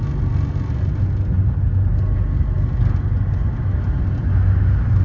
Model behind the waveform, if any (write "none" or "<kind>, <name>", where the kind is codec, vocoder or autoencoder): none